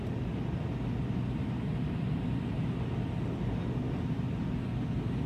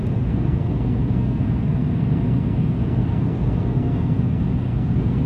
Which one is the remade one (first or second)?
second